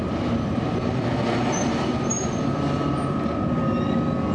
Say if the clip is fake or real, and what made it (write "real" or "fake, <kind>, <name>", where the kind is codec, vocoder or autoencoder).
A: real